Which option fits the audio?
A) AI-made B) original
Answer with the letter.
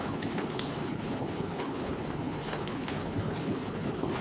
A